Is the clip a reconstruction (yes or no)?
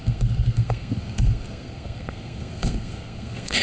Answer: yes